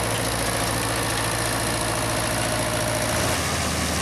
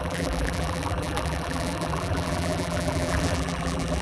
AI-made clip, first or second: second